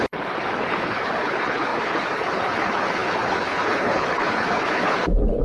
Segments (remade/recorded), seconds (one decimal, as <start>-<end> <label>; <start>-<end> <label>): 0.0-5.4 remade

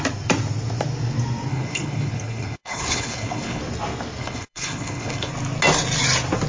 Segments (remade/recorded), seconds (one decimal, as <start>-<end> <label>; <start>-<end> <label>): 0.0-1.5 recorded; 1.5-3.6 remade; 3.6-4.2 recorded; 4.2-5.3 remade; 5.3-6.5 recorded

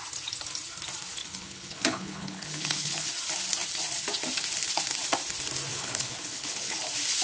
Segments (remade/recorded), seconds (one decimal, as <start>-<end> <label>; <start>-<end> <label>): 0.0-1.2 recorded; 1.2-3.1 remade; 3.1-5.7 recorded; 5.7-6.8 remade; 6.8-7.2 recorded

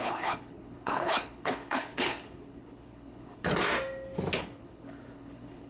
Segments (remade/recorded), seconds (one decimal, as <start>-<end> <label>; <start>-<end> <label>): 0.0-3.5 remade; 3.5-4.4 recorded; 4.4-5.7 remade